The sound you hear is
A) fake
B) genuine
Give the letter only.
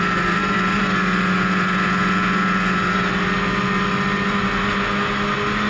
B